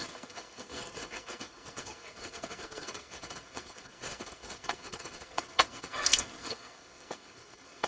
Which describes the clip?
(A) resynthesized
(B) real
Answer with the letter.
A